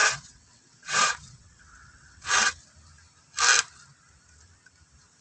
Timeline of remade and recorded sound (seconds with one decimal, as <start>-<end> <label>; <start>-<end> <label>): 0.0-2.5 remade; 2.5-5.2 recorded